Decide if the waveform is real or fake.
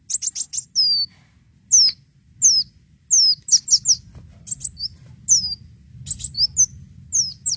real